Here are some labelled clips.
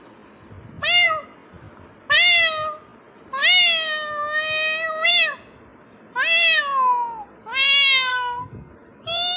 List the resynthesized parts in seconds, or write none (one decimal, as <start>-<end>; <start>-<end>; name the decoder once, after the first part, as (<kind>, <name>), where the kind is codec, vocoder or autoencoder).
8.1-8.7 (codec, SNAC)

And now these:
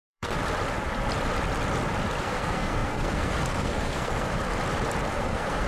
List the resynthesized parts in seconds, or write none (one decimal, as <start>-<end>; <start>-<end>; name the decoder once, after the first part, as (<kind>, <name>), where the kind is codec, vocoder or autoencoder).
0.0-0.4 (codec, SNAC); 2.2-4.5; 5.1-5.7

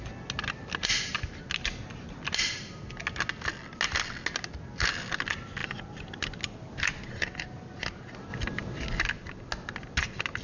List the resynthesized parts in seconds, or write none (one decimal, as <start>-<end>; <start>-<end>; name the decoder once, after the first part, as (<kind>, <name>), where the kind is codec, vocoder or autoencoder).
none